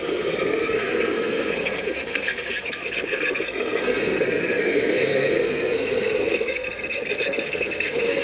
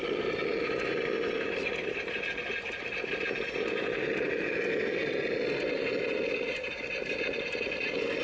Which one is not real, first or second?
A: first